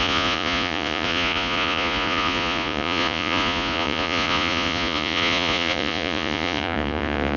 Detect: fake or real fake